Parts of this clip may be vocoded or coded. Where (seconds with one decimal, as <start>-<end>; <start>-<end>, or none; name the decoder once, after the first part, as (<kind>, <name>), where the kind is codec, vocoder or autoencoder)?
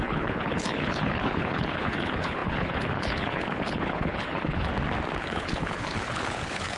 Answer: 0.0-4.7 (codec, HILCodec); 5.2-6.8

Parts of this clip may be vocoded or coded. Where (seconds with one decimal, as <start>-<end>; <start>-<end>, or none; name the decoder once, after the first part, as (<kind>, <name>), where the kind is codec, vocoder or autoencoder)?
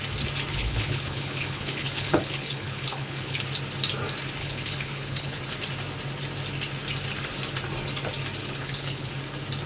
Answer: 0.5-3.4 (codec, HILCodec); 4.4-5.4; 8.4-9.1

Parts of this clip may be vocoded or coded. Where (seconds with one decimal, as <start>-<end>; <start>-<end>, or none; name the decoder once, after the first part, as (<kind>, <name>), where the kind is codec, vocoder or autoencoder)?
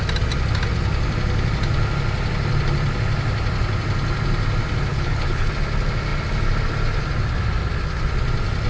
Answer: 4.9-5.5 (codec, HILCodec)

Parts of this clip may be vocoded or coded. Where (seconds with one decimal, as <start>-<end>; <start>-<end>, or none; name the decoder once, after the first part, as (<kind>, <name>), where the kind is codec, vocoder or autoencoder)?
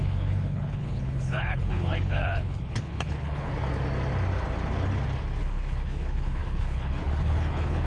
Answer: 0.0-3.5 (codec, HILCodec); 5.4-7.9